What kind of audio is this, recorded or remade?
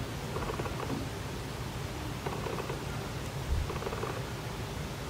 recorded